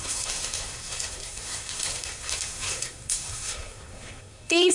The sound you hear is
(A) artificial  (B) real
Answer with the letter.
A